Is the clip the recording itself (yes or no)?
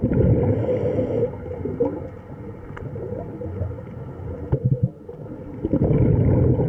yes